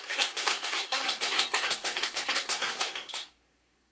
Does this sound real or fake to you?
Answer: fake